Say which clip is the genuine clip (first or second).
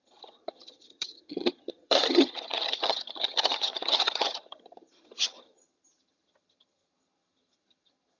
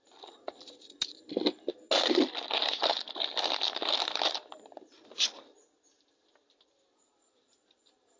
second